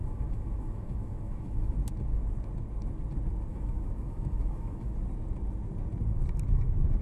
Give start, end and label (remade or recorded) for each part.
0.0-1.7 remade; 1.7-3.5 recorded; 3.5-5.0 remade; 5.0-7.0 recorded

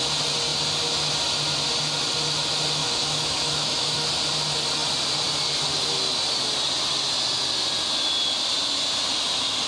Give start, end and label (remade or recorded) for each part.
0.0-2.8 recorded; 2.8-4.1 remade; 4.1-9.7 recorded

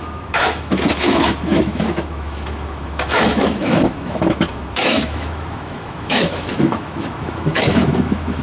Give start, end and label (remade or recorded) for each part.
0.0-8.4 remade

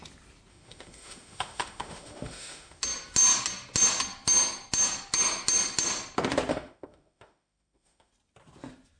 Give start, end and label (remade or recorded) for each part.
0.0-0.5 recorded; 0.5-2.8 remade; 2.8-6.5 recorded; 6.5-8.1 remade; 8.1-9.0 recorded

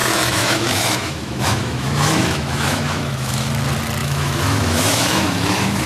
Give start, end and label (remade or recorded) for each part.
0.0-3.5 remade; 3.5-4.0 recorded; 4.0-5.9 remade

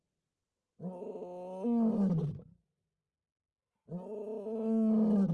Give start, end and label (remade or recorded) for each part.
0.0-5.3 recorded

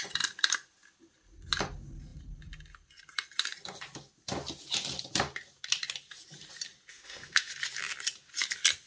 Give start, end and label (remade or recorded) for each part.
0.0-6.9 recorded; 6.9-7.5 remade; 7.5-8.9 recorded